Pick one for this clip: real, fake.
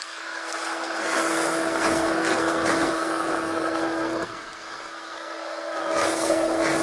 fake